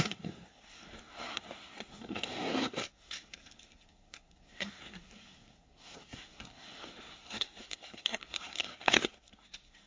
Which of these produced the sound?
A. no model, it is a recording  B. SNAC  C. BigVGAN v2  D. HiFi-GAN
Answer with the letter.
B